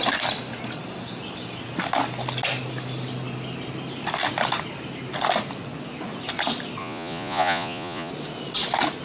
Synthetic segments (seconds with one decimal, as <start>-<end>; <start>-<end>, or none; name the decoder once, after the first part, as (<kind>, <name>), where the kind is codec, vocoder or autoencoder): 6.8-8.1 (vocoder, Vocos)